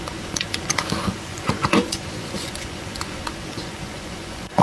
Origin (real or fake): fake